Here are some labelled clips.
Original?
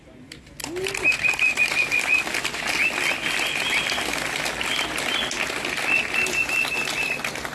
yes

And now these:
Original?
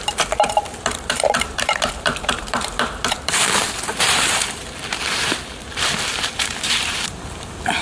no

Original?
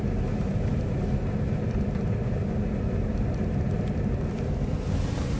yes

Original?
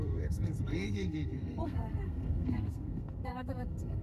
no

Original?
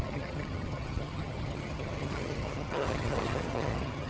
no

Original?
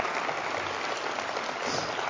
yes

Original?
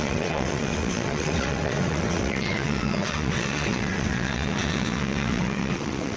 no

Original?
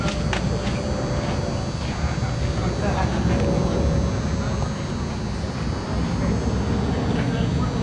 yes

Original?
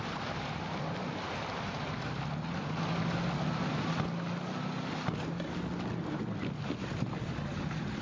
yes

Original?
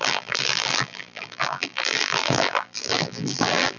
no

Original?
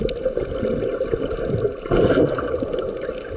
yes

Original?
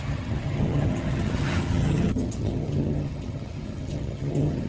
no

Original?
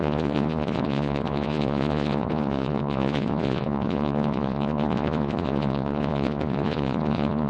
no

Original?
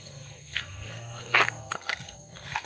no